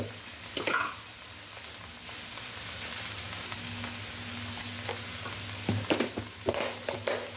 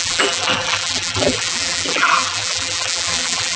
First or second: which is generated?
second